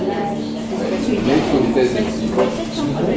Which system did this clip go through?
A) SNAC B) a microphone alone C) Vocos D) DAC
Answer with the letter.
B